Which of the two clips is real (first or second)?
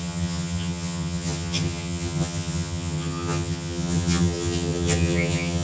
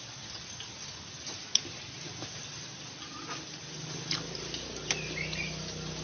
second